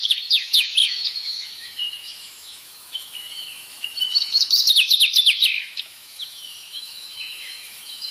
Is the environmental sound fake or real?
fake